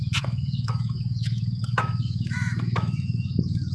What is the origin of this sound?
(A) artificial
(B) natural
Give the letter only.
A